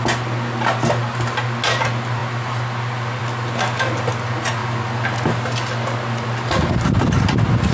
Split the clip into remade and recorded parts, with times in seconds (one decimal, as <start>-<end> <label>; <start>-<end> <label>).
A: 0.0-7.7 recorded